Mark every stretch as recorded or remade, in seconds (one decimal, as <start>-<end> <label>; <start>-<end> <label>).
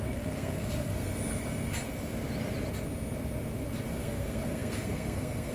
0.0-1.1 remade; 1.1-4.0 recorded; 4.0-5.5 remade